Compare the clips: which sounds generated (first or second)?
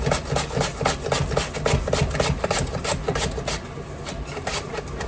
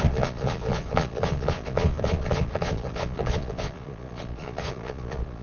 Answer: second